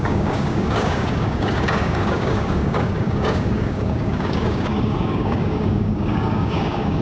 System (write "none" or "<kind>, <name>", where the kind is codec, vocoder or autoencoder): codec, DAC